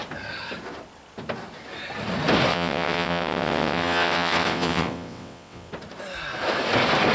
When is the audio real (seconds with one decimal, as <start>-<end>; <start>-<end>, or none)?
0.0-2.5; 5.7-7.1

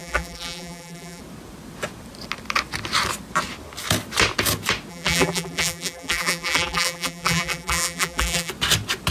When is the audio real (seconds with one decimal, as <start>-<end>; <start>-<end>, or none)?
1.2-4.9; 8.5-9.1